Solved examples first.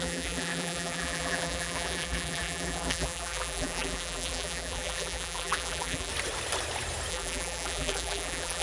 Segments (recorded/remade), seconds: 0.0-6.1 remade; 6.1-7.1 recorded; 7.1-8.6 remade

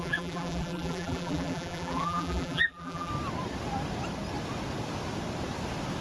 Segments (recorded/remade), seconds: 0.0-3.1 remade; 3.1-6.0 recorded

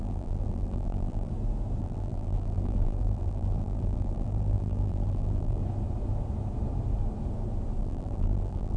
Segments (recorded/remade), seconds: 0.0-1.3 remade; 1.3-1.8 recorded; 1.8-5.6 remade; 5.6-7.8 recorded; 7.8-8.8 remade

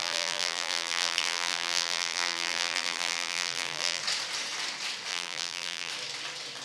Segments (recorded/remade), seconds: 0.0-4.0 remade; 4.0-5.1 recorded; 5.1-5.9 remade; 5.9-6.6 recorded

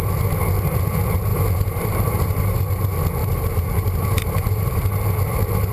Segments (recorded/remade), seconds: 0.0-1.3 recorded; 1.3-2.6 remade; 2.6-3.2 recorded; 3.2-4.9 remade; 4.9-5.7 recorded

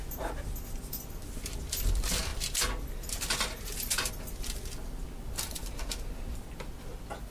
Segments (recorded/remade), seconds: 0.0-7.3 recorded

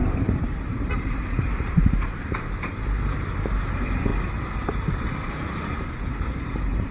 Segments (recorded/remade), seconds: 0.0-4.1 remade; 4.1-4.7 recorded; 4.7-6.9 remade